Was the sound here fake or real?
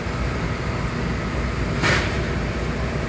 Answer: real